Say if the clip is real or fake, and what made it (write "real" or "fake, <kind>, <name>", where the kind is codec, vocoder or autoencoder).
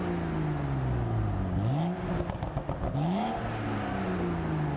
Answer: real